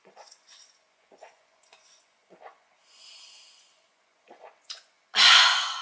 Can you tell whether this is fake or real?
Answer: fake